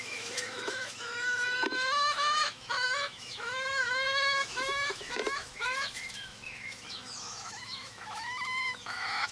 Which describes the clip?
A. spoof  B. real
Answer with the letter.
A